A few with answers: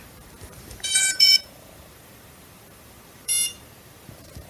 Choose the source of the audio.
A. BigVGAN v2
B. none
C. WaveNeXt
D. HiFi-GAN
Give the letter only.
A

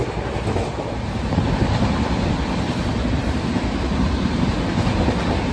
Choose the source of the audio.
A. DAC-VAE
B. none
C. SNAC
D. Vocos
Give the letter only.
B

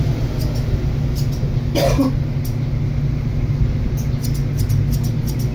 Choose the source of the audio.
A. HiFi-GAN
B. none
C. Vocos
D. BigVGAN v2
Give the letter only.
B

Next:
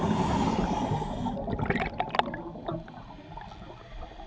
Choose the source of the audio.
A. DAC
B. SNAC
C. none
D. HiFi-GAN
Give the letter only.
C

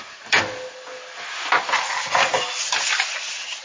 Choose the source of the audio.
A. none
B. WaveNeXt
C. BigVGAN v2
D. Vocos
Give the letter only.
A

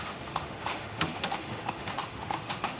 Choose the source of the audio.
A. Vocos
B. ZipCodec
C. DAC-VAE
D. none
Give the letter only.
C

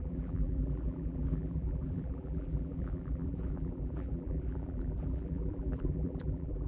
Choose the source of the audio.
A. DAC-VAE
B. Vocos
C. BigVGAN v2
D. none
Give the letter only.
C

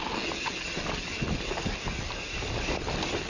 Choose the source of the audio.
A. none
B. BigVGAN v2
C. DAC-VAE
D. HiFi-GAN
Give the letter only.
A